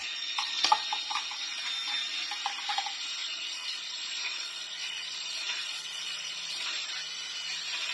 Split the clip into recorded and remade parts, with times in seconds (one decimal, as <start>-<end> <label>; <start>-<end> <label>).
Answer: 0.0-0.7 remade; 0.7-3.2 recorded; 3.2-6.9 remade; 6.9-7.9 recorded

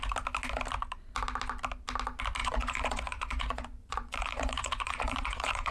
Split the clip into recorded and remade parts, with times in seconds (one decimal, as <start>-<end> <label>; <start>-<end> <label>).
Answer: 0.0-2.4 recorded; 2.4-5.7 remade

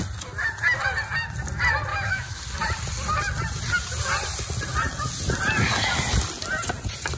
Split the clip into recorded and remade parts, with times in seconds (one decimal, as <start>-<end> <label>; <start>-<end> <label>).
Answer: 0.0-1.9 recorded; 1.9-2.4 remade; 2.4-7.2 recorded

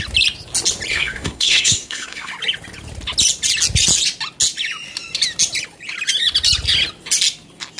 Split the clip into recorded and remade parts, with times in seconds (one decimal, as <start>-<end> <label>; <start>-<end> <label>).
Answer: 0.0-0.9 recorded; 0.9-2.3 remade; 2.3-7.8 recorded

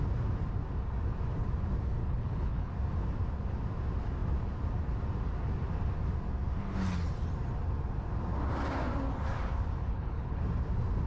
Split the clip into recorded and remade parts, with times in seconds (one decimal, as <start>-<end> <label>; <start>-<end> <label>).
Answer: 0.0-2.0 recorded; 2.0-2.7 remade; 2.7-9.8 recorded; 9.8-10.4 remade; 10.4-11.1 recorded

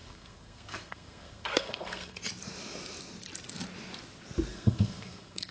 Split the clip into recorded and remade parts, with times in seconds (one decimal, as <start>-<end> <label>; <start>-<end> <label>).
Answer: 0.0-2.2 remade; 2.2-4.5 recorded; 4.5-5.5 remade

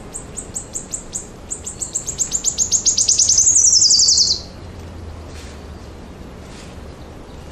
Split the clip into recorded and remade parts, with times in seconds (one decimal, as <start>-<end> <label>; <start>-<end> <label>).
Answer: 0.0-0.7 recorded; 0.7-2.1 remade; 2.1-7.5 recorded

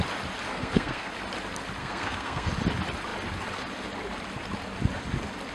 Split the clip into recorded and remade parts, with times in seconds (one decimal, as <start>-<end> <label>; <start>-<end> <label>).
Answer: 0.0-0.5 recorded; 0.5-1.1 remade; 1.1-1.8 recorded; 1.8-2.5 remade; 2.5-5.5 recorded